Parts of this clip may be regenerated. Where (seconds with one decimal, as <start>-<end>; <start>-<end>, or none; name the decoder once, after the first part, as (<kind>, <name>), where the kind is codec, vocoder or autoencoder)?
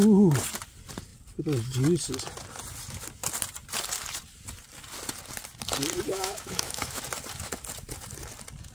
6.1-7.0 (autoencoder, DAC-VAE)